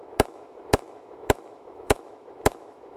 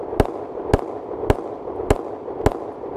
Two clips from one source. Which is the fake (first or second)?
first